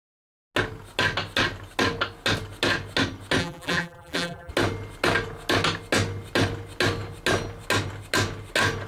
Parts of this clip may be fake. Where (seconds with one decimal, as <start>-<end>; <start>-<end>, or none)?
3.4-4.5